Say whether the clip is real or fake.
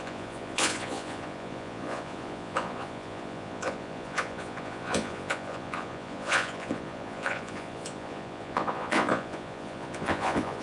fake